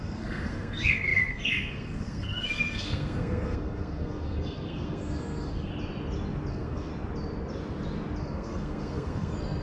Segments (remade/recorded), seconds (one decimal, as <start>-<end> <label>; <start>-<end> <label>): 0.0-5.7 remade; 5.7-6.5 recorded; 6.5-6.9 remade; 6.9-8.2 recorded; 8.2-9.6 remade